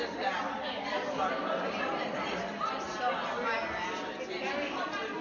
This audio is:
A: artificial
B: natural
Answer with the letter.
B